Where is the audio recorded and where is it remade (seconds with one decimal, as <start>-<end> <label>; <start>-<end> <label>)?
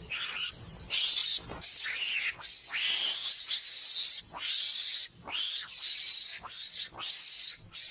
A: 0.0-1.2 remade; 1.2-4.2 recorded; 4.2-7.9 remade